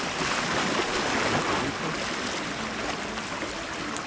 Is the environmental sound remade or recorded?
recorded